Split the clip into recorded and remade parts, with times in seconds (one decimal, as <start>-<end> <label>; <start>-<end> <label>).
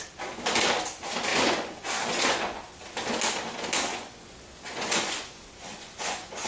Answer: 0.0-1.3 recorded; 1.3-2.6 remade; 2.6-3.9 recorded; 3.9-6.5 remade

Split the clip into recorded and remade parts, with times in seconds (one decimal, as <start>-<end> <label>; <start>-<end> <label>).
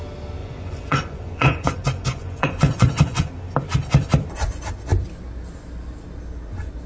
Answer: 0.0-0.4 recorded; 0.4-3.3 remade; 3.3-6.9 recorded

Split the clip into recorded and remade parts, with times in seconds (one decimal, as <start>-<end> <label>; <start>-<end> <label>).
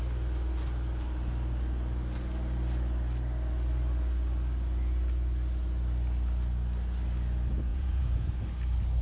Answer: 0.0-7.7 recorded; 7.7-8.3 remade; 8.3-9.0 recorded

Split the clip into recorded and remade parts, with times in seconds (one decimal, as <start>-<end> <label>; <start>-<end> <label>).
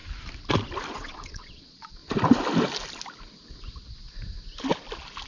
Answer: 0.0-0.9 recorded; 0.9-2.0 remade; 2.0-5.3 recorded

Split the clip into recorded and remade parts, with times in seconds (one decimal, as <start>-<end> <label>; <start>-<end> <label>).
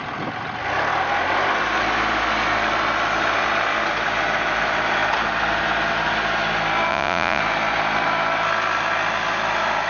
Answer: 0.0-6.9 recorded; 6.9-7.4 remade; 7.4-9.9 recorded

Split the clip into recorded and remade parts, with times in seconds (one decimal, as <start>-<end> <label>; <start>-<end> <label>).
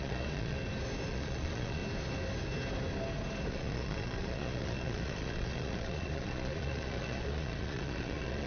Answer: 0.0-0.6 remade; 0.6-1.1 recorded; 1.1-1.8 remade; 1.8-3.5 recorded; 3.5-8.5 remade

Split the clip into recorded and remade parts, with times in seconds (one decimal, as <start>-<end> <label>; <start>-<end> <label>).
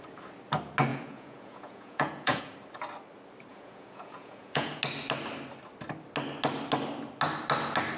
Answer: 0.0-0.9 recorded; 0.9-2.4 remade; 2.4-3.5 recorded; 3.5-4.8 remade; 4.8-8.0 recorded